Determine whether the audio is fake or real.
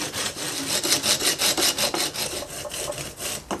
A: real